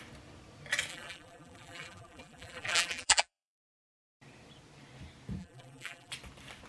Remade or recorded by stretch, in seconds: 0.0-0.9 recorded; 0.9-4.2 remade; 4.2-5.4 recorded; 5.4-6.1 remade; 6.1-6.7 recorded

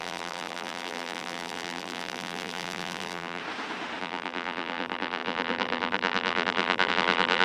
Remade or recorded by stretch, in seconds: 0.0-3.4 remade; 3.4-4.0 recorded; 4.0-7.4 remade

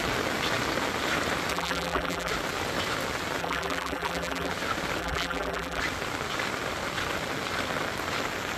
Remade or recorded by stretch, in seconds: 0.0-1.5 recorded; 1.5-2.3 remade; 2.3-3.4 recorded; 3.4-4.5 remade; 4.5-5.0 recorded; 5.0-5.8 remade; 5.8-8.6 recorded